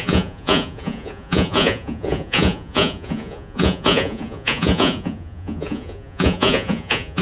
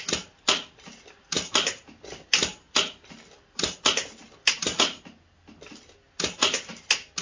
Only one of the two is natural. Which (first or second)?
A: second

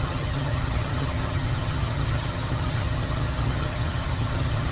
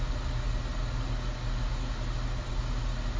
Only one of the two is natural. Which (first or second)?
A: second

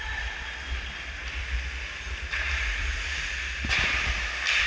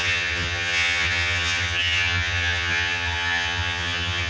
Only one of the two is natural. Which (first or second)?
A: first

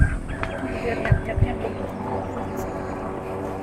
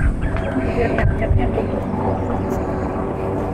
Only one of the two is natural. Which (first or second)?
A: first